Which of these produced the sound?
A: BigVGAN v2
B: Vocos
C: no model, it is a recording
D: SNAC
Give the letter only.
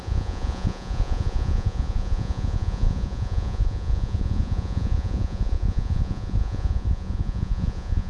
B